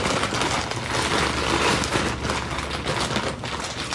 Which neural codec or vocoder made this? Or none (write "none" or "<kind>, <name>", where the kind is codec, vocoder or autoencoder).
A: none